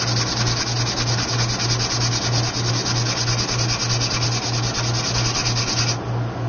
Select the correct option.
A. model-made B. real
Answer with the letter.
B